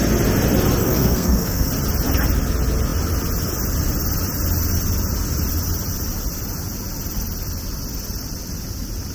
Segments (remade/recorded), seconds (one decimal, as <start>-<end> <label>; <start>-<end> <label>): 0.0-0.8 recorded; 0.8-1.7 remade; 1.7-9.1 recorded